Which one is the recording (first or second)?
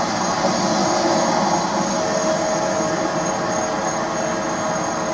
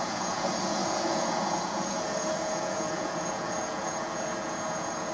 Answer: first